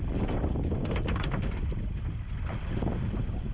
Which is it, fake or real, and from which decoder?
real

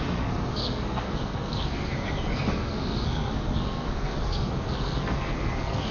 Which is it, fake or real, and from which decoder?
fake, codec, SNAC